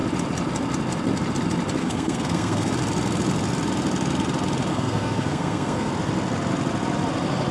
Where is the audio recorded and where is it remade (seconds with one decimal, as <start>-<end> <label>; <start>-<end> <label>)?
0.0-1.8 recorded; 1.8-2.7 remade; 2.7-4.7 recorded; 4.7-5.9 remade; 5.9-7.5 recorded